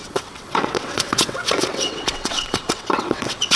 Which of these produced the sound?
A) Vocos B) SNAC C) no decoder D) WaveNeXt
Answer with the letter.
D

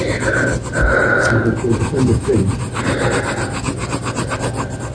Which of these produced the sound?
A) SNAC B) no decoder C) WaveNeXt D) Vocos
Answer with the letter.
B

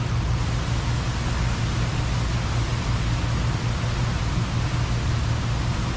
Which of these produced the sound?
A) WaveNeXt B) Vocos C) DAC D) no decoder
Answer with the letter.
D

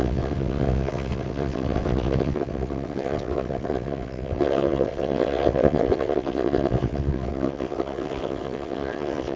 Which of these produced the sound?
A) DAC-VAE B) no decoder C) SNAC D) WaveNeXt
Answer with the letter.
D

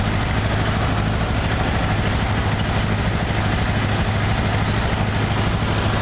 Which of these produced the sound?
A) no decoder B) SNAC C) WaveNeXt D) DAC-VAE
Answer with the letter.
A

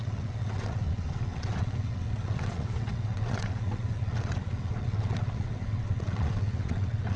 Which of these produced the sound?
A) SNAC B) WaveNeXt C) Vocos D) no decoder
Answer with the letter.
B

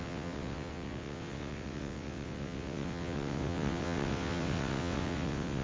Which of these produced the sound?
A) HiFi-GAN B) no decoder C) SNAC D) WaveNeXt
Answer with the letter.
D